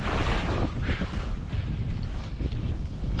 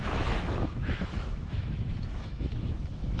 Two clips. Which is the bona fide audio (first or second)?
first